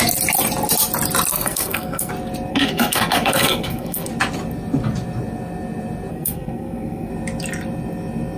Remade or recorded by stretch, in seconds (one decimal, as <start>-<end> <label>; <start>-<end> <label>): 0.0-1.3 recorded; 1.3-2.1 remade; 2.1-2.5 recorded; 2.5-4.1 remade; 4.1-6.1 recorded; 6.1-7.1 remade; 7.1-8.4 recorded